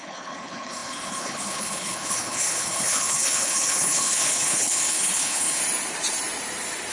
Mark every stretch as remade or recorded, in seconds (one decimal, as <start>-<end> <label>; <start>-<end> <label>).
0.0-5.6 remade; 5.6-6.9 recorded